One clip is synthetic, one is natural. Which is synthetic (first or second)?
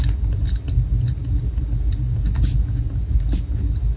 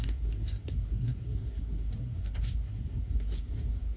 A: second